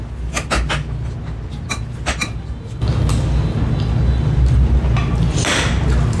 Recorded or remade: recorded